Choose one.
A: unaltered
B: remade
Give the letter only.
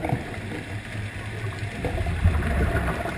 A